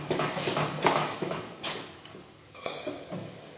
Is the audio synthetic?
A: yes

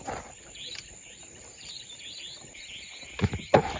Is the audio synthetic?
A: no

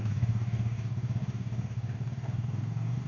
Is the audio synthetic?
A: yes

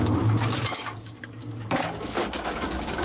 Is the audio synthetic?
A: yes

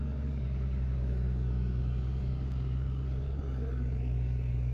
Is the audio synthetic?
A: yes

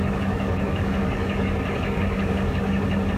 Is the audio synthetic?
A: yes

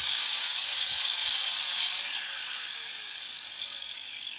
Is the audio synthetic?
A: yes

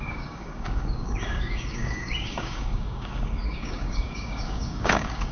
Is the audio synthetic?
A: yes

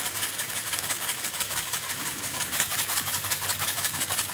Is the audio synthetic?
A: yes